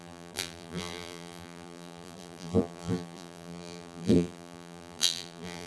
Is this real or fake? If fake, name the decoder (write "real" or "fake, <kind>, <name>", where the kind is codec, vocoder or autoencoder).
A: fake, vocoder, BigVGAN v2